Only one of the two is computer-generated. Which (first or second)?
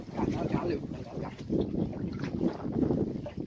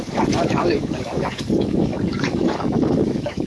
second